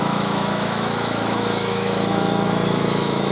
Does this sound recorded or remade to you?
remade